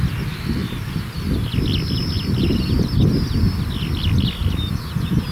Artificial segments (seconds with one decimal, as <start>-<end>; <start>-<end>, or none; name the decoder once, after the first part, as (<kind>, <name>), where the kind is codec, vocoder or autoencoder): none

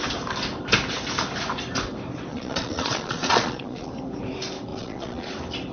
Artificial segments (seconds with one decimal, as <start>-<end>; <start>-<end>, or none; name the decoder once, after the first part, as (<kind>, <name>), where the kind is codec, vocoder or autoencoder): 2.3-3.9 (vocoder, Vocos); 4.7-5.3